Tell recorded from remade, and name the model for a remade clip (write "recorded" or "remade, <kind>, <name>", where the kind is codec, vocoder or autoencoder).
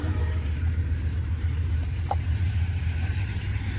remade, vocoder, BigVGAN v2